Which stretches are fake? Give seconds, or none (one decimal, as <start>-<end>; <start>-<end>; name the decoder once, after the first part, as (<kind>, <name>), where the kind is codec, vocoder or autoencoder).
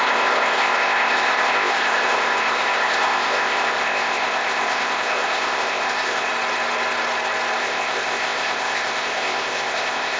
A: 0.0-6.3 (codec, ZipCodec); 7.6-10.2